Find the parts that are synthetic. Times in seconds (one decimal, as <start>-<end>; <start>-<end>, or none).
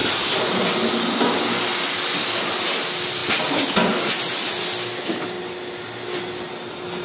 none